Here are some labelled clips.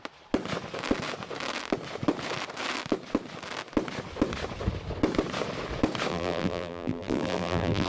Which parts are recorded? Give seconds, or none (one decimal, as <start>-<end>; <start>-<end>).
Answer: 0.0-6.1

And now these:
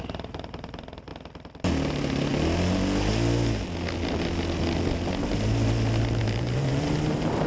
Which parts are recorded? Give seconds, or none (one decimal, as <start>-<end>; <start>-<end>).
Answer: 1.1-1.7; 2.3-6.2

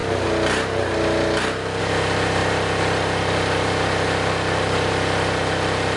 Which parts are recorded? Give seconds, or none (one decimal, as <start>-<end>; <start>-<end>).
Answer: 0.0-1.8